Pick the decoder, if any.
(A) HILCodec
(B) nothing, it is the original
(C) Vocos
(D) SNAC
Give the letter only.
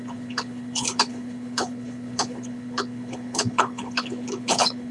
A